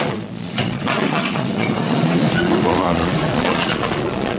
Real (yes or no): no